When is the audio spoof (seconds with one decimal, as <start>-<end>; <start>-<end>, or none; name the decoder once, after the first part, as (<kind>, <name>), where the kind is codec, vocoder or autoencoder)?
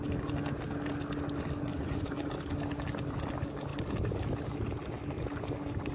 1.7-2.3 (vocoder, Vocos)